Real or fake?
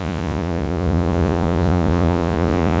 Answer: fake